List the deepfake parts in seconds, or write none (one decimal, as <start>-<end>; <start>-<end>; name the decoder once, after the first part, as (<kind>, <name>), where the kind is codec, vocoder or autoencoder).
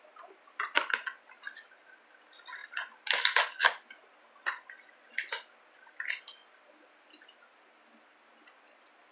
none